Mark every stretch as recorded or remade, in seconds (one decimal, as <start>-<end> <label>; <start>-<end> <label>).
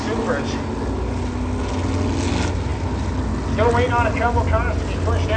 0.0-5.4 recorded